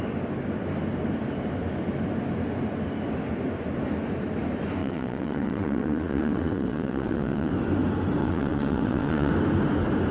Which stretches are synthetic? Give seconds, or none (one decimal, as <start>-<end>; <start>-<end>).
4.8-7.5; 8.2-9.3